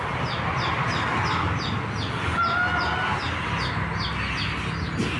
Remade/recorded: recorded